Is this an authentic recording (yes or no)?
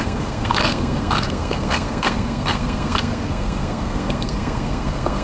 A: no